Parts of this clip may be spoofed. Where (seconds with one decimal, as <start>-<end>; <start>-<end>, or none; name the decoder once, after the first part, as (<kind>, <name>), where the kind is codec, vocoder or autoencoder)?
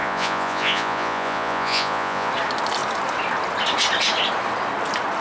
0.0-2.3 (vocoder, Vocos)